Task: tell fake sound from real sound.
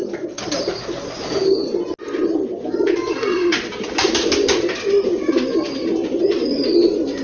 real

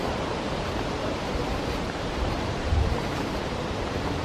fake